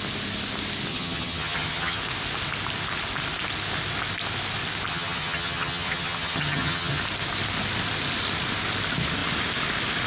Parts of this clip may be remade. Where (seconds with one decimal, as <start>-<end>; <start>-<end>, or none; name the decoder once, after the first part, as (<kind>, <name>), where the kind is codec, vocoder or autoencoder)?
0.9-2.0 (vocoder, HiFi-GAN); 4.9-7.0